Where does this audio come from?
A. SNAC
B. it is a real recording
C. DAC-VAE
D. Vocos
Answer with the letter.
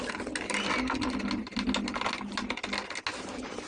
B